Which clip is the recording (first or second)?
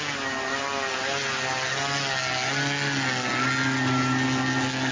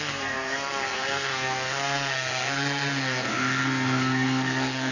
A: first